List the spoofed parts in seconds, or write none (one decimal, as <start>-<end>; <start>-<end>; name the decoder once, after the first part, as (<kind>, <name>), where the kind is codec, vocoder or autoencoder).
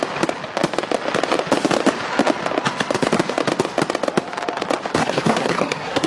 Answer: 5.0-6.1 (codec, SNAC)